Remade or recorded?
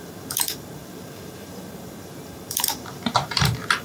remade